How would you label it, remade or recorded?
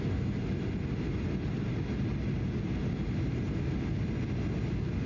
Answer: recorded